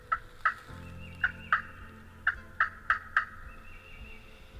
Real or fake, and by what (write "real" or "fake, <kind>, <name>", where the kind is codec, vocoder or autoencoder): real